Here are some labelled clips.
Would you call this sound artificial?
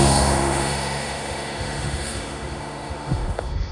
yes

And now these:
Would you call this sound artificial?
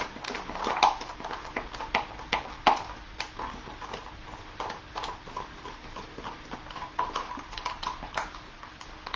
no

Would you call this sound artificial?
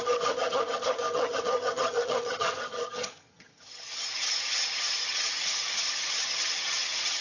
yes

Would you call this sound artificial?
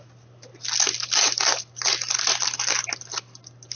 no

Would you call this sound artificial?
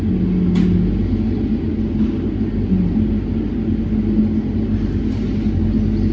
no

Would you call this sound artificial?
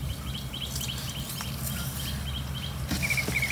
no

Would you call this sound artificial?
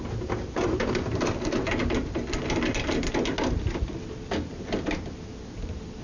no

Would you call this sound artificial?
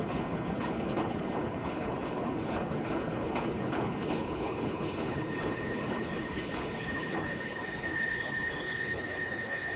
yes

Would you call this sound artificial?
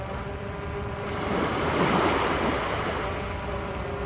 no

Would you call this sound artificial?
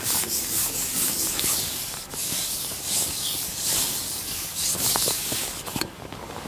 yes